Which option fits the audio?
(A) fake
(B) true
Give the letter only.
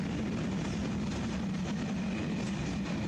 B